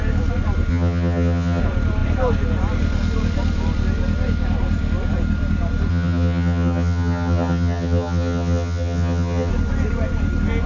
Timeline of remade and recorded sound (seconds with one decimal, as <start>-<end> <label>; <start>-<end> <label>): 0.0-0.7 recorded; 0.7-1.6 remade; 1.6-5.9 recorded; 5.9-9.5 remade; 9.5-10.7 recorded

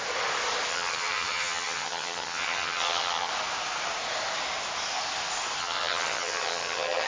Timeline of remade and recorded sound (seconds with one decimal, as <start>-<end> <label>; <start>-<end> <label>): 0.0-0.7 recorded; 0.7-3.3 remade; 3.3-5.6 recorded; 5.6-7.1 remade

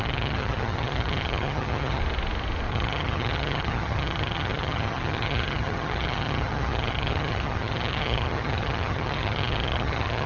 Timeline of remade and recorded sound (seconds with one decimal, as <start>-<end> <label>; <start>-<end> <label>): 0.0-2.0 remade; 2.0-2.7 recorded; 2.7-10.3 remade

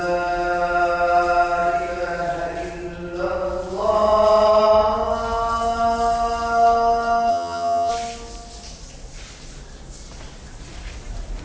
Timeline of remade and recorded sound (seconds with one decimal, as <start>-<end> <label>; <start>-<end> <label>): 0.0-7.3 recorded; 7.3-7.9 remade; 7.9-11.4 recorded